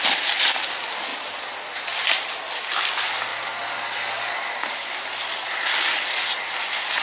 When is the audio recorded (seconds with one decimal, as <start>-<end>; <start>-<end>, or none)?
0.0-7.0